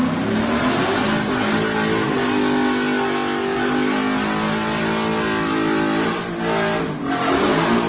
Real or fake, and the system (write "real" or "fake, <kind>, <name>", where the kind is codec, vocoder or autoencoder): real